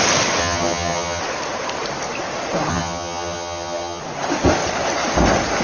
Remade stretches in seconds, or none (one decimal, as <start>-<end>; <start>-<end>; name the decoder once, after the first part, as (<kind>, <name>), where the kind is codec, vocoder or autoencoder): 0.4-1.2 (vocoder, HiFi-GAN); 2.7-4.0